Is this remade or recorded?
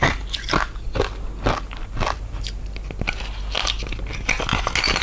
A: recorded